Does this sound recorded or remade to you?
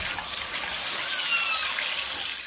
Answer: recorded